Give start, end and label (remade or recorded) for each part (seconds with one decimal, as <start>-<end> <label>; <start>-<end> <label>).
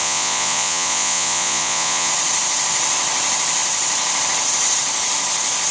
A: 0.0-2.1 remade; 2.1-5.7 recorded